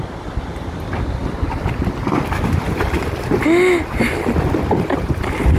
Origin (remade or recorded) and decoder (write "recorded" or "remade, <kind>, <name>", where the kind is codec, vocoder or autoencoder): recorded